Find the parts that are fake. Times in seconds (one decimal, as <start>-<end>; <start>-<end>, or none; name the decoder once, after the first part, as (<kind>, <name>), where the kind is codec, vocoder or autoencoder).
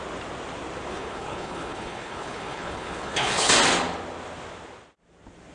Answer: 0.9-3.5 (codec, HILCodec)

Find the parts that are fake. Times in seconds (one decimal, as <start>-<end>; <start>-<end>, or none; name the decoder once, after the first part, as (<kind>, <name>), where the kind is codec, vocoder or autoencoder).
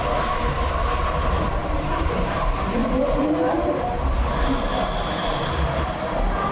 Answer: 1.0-2.8 (vocoder, BigVGAN v2)